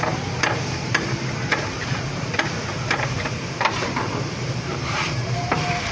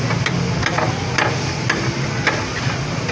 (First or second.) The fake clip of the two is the first